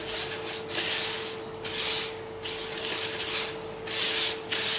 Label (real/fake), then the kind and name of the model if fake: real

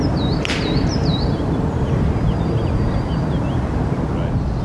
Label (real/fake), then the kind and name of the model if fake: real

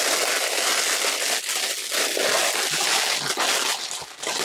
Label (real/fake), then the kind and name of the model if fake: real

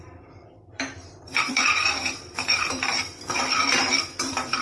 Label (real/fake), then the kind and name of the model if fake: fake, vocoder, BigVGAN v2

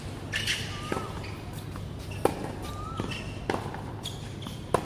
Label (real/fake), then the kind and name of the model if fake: real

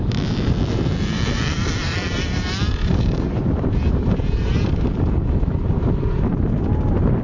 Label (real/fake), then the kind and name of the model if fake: fake, vocoder, BigVGAN v2